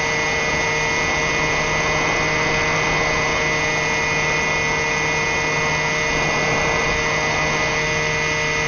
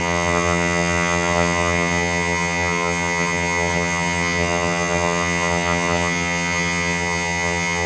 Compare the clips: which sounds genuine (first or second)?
first